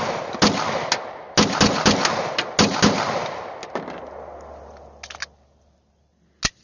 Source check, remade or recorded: recorded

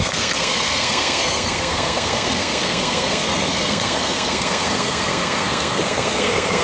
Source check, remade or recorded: remade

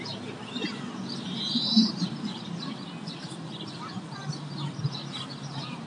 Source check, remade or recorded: remade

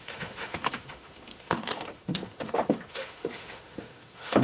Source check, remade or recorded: remade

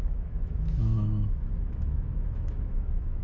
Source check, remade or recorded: remade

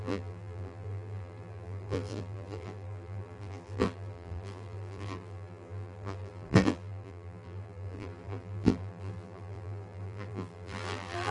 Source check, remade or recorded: remade